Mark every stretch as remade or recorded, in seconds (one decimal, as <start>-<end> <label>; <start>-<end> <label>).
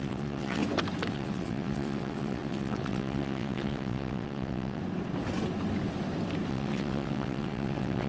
0.0-0.6 remade; 0.6-1.1 recorded; 1.1-4.8 remade; 4.8-6.5 recorded; 6.5-8.1 remade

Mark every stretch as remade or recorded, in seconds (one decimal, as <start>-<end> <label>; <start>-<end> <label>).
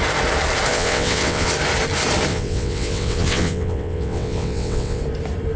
0.0-0.7 recorded; 0.7-1.5 remade; 1.5-2.3 recorded; 2.3-5.0 remade; 5.0-5.6 recorded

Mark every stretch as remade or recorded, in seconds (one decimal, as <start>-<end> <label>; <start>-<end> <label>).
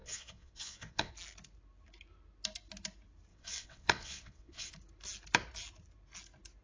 0.0-1.1 remade; 1.1-3.3 recorded; 3.3-4.7 remade; 4.7-6.6 recorded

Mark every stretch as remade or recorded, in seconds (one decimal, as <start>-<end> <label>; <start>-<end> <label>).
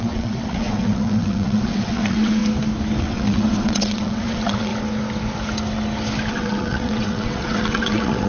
0.0-2.4 remade; 2.4-3.0 recorded; 3.0-4.7 remade; 4.7-6.3 recorded; 6.3-8.3 remade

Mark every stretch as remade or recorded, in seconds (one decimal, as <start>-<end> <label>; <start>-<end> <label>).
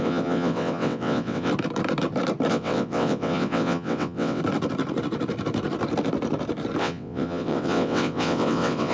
0.0-1.5 remade; 1.5-2.5 recorded; 2.5-4.4 remade; 4.4-6.8 recorded; 6.8-8.9 remade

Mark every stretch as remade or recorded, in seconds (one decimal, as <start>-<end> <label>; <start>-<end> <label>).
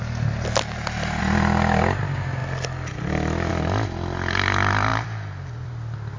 0.0-6.2 recorded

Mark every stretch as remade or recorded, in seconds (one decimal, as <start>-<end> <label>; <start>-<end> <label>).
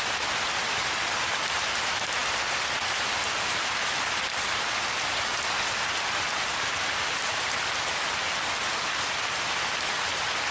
0.0-10.5 recorded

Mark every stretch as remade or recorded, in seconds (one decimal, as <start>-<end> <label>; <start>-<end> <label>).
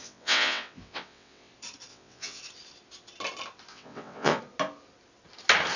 0.0-1.5 remade; 1.5-1.9 recorded; 1.9-2.4 remade; 2.4-3.7 recorded; 3.7-4.4 remade; 4.4-5.8 recorded